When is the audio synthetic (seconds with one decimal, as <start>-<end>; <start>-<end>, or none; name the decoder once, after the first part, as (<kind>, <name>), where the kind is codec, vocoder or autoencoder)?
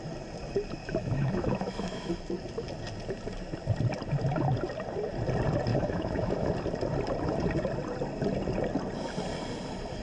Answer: 0.8-2.1 (autoencoder, DAC-VAE); 5.7-6.5